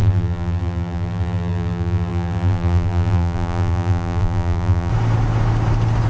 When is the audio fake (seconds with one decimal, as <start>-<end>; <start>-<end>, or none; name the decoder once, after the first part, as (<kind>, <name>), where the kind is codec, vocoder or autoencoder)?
0.0-4.9 (vocoder, BigVGAN v2)